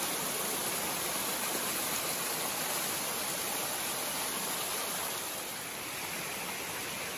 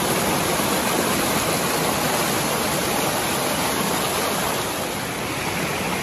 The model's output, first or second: first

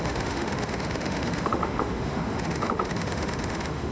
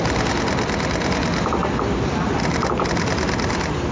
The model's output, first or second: first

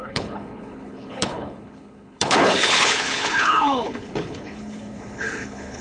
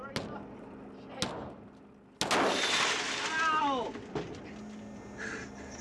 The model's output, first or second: first